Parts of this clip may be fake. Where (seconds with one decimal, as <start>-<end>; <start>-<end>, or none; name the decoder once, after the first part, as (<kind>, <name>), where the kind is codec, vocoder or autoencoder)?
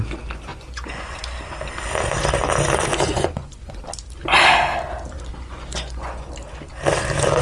0.5-1.2 (vocoder, Vocos); 3.1-3.8; 5.3-6.3